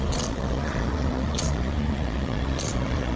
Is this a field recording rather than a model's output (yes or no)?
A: no